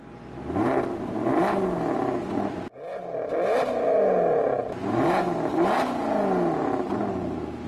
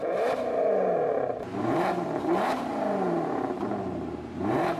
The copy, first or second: second